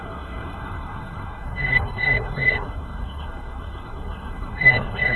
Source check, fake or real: fake